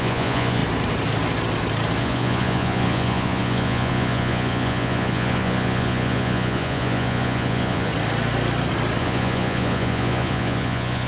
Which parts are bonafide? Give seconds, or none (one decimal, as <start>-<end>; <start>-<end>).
0.6-2.0; 7.9-9.0